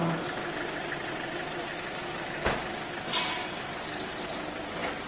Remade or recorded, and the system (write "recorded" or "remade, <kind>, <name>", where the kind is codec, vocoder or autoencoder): recorded